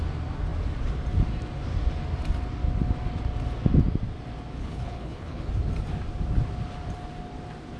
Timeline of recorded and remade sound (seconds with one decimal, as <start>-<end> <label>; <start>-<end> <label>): 0.0-4.6 recorded; 4.6-5.5 remade; 5.5-7.8 recorded